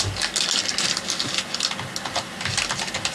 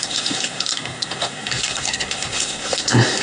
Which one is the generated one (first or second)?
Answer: second